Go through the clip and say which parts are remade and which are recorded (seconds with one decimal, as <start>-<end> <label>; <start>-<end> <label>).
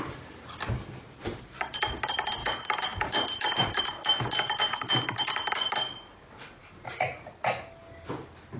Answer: 0.0-8.6 recorded